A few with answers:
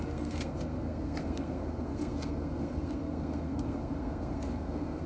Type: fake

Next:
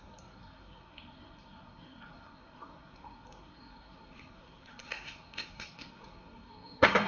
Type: fake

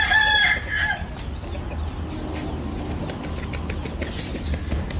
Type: real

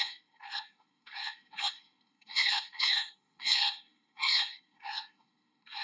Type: fake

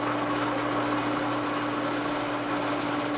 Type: real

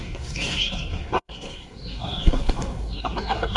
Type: fake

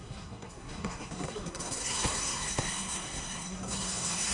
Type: fake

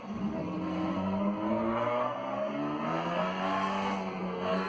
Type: fake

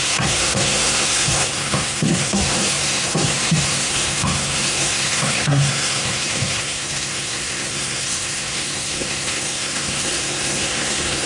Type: fake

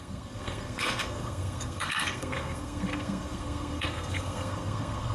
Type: fake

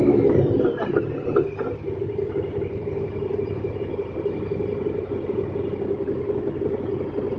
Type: real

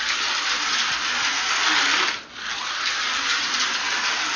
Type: real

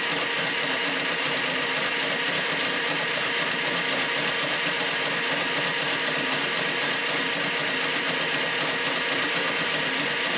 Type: real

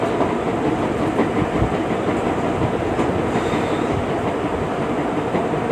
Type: real